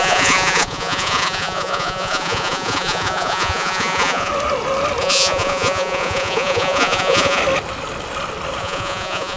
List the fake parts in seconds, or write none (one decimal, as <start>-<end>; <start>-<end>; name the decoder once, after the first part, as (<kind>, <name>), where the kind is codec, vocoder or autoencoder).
0.0-4.3 (vocoder, Vocos); 5.0-7.4; 8.6-9.4